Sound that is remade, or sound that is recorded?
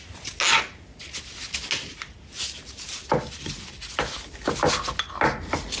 recorded